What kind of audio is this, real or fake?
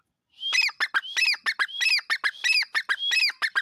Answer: real